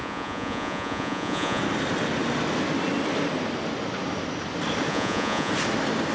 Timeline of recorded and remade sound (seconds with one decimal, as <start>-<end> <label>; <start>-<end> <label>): 0.0-1.6 remade; 1.6-4.9 recorded; 4.9-5.5 remade; 5.5-6.1 recorded